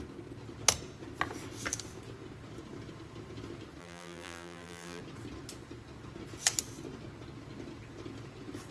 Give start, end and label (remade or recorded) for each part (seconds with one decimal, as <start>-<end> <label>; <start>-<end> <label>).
0.0-3.8 recorded; 3.8-5.0 remade; 5.0-8.7 recorded